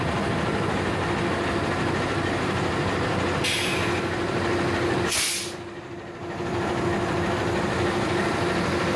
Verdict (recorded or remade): recorded